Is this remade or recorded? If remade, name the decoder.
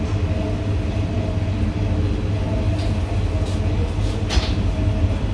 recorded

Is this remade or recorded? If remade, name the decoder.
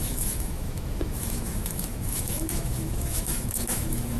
remade, autoencoder, DAC-VAE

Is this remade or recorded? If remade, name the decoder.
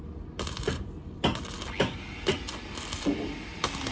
recorded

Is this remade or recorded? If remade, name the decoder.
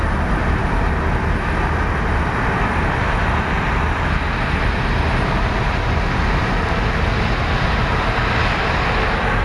recorded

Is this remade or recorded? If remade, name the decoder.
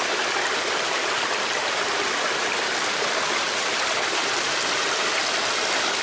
remade, vocoder, BigVGAN v2